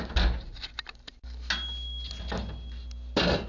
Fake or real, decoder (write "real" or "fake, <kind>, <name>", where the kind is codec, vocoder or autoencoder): real